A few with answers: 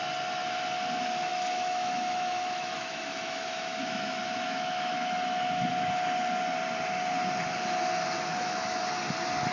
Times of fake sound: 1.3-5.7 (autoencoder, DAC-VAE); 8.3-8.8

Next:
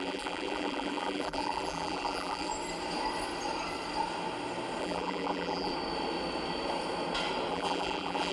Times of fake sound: 0.0-2.5 (vocoder, BigVGAN v2); 4.8-5.7; 7.5-8.3